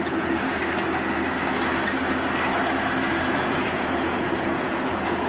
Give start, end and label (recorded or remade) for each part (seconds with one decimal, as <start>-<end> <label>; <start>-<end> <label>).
0.0-0.6 remade; 0.6-3.4 recorded; 3.4-5.3 remade

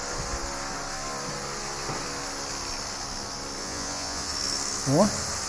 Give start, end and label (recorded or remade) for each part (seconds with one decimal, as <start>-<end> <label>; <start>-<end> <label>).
0.0-3.6 recorded; 3.6-4.3 remade; 4.3-5.5 recorded

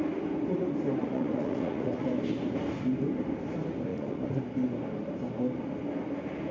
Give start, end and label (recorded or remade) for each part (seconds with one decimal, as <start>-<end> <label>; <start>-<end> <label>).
0.0-1.0 recorded; 1.0-2.1 remade; 2.1-3.9 recorded; 3.9-4.4 remade; 4.4-6.5 recorded

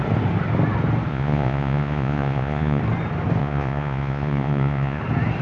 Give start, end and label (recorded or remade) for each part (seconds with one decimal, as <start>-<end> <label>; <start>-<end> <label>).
0.0-1.1 recorded; 1.1-2.8 remade; 2.8-3.4 recorded; 3.4-5.0 remade; 5.0-5.4 recorded

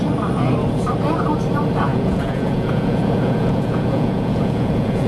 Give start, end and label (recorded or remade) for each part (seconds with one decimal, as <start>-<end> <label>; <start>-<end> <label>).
0.0-1.9 recorded; 1.9-5.1 remade

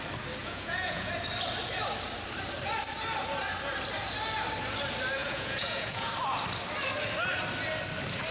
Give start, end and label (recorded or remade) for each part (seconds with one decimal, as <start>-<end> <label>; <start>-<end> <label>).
0.0-0.4 recorded; 0.4-1.1 remade; 1.1-5.2 recorded; 5.2-6.1 remade; 6.1-8.3 recorded

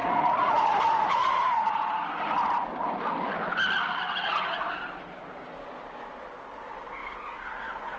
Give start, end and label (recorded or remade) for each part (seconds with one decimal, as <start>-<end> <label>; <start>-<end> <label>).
0.0-1.9 remade; 1.9-8.0 recorded

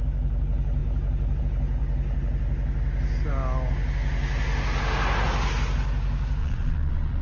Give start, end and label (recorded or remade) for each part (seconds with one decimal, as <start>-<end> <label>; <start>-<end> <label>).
0.0-6.4 recorded; 6.4-7.2 remade